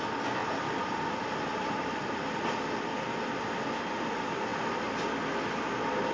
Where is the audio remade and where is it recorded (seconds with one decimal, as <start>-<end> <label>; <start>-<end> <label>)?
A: 0.0-6.1 recorded